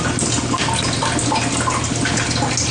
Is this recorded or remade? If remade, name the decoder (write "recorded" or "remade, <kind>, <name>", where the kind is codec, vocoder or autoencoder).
recorded